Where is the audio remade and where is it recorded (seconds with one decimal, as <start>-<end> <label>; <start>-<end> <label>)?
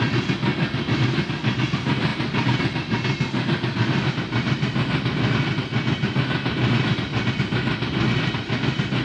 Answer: 0.0-9.0 recorded